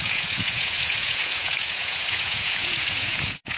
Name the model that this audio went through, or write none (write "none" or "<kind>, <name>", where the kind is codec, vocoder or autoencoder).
vocoder, Vocos